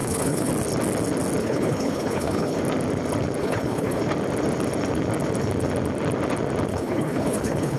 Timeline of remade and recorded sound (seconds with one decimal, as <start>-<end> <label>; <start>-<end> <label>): 0.0-0.5 remade; 0.5-1.4 recorded; 1.4-2.6 remade; 2.6-3.4 recorded; 3.4-4.0 remade; 4.0-6.7 recorded; 6.7-7.8 remade